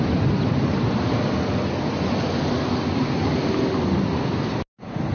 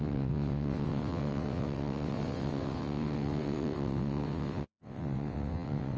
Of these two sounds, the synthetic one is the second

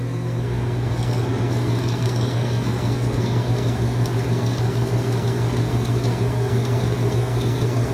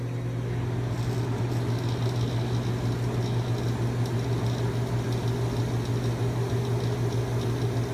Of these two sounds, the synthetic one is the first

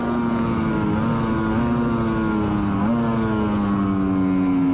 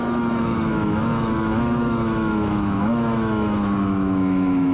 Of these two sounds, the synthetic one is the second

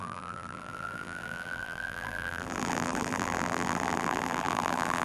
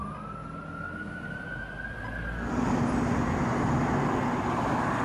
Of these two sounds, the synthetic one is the first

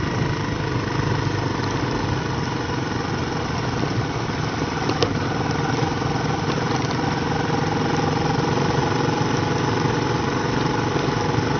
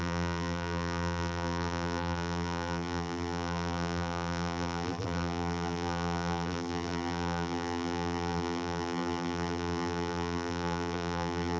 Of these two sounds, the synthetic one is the second